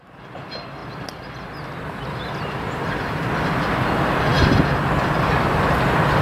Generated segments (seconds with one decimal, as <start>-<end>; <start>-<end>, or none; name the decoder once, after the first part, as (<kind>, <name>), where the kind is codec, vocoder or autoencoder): none